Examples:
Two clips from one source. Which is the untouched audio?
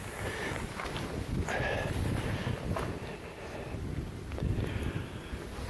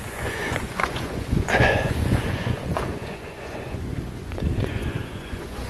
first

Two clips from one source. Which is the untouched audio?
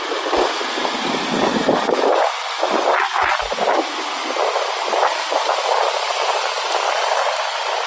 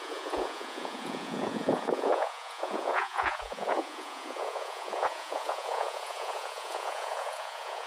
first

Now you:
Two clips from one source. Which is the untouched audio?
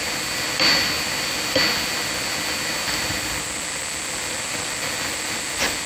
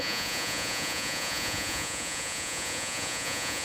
first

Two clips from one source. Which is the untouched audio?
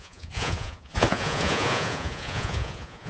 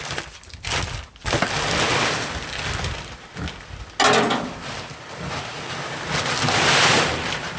second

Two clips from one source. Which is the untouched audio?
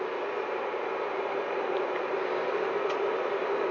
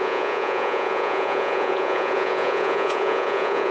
first